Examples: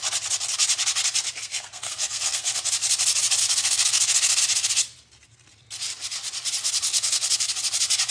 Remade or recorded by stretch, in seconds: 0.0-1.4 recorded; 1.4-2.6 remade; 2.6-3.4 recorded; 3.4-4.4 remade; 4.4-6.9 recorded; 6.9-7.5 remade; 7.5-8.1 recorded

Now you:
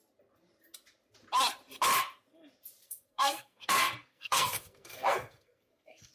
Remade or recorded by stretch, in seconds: 0.0-2.8 recorded; 2.8-6.1 remade

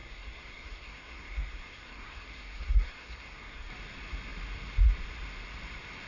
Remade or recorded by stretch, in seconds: 0.0-3.7 remade; 3.7-6.1 recorded

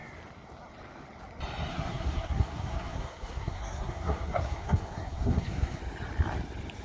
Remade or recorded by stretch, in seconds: 0.0-1.7 recorded; 1.7-5.8 remade; 5.8-6.8 recorded

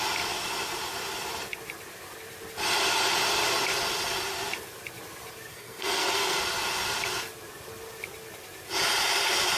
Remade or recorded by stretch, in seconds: 0.0-5.5 recorded; 5.5-6.4 remade; 6.4-9.6 recorded

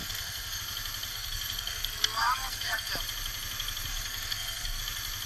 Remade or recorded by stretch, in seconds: 0.0-0.6 remade; 0.6-1.1 recorded; 1.1-2.9 remade; 2.9-3.9 recorded; 3.9-4.8 remade; 4.8-5.3 recorded